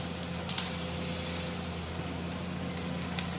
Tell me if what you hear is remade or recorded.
recorded